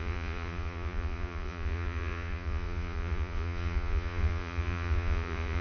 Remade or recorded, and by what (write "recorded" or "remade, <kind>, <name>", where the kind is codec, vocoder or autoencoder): remade, vocoder, Vocos